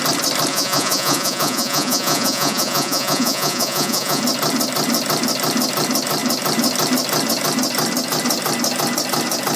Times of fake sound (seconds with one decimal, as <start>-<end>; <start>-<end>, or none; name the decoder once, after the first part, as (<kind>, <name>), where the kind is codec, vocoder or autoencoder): 0.5-4.2 (vocoder, Vocos)